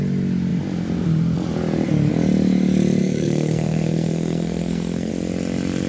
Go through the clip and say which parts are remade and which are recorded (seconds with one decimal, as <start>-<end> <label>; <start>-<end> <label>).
0.0-3.0 recorded; 3.0-5.1 remade; 5.1-5.9 recorded